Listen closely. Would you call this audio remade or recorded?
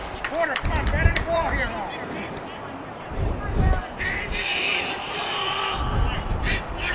remade